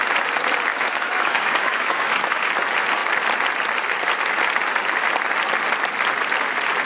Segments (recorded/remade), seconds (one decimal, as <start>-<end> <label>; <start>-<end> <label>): 0.0-0.7 recorded; 0.7-2.4 remade; 2.4-6.8 recorded